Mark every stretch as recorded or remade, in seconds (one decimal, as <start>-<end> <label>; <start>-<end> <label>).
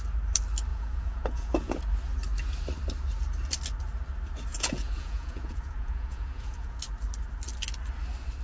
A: 0.0-0.7 recorded; 0.7-1.8 remade; 1.8-4.5 recorded; 4.5-6.8 remade; 6.8-8.4 recorded